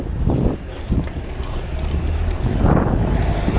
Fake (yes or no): no